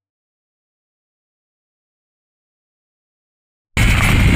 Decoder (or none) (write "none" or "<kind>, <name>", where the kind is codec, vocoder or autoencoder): none